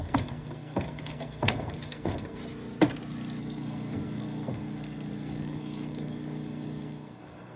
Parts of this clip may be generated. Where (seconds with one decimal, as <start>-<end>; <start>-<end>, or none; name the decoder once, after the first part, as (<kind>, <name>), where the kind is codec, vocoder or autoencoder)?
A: 0.0-2.4 (codec, SNAC); 3.4-7.6